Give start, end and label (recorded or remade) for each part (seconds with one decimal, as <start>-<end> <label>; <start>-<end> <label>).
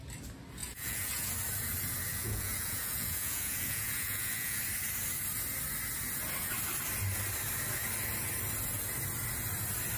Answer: 0.0-0.6 recorded; 0.6-1.3 remade; 1.3-2.1 recorded; 2.1-4.6 remade; 4.6-10.0 recorded